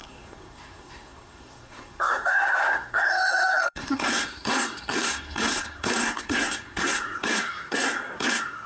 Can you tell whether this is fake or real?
fake